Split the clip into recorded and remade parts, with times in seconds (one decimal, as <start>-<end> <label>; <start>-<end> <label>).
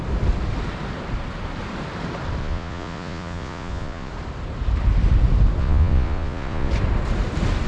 0.0-2.4 recorded; 2.4-4.1 remade; 4.1-5.6 recorded; 5.6-6.7 remade; 6.7-7.7 recorded